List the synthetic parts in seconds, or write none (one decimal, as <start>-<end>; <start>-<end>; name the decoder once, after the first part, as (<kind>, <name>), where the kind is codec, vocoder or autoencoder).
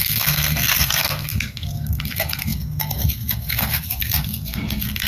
0.0-5.1 (codec, SNAC)